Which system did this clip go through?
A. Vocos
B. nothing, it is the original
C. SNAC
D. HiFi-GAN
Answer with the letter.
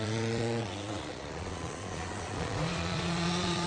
A